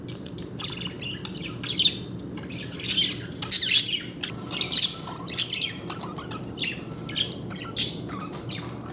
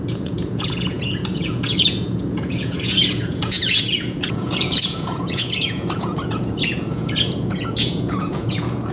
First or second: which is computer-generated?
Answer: second